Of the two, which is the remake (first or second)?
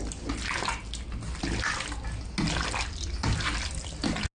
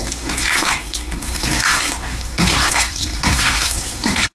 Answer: second